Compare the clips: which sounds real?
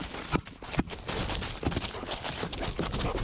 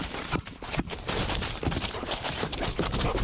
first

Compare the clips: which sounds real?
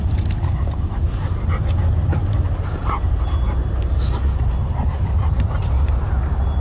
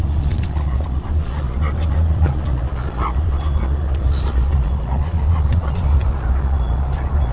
first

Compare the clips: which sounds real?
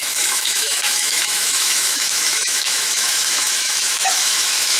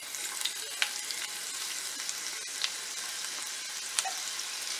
second